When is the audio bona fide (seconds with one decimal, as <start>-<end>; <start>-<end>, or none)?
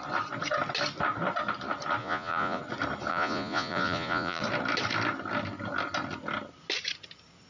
0.0-2.0; 2.6-3.1; 4.4-7.5